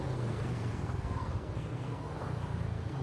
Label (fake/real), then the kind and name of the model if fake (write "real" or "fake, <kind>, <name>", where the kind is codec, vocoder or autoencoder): fake, codec, SNAC